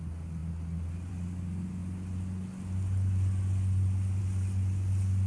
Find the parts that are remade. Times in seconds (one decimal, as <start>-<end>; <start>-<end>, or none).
none